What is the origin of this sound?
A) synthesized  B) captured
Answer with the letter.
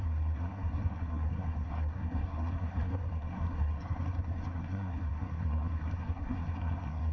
A